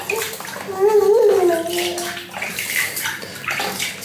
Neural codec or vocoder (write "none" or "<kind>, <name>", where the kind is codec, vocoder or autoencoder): none